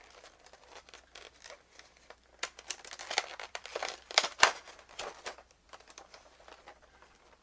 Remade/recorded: remade